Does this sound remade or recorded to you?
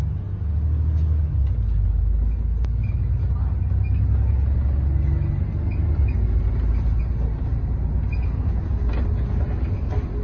recorded